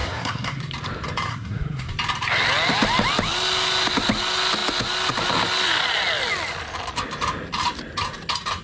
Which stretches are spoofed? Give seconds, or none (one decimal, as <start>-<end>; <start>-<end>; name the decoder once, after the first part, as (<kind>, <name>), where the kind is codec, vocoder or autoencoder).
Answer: 0.0-0.6 (codec, SNAC); 1.3-1.9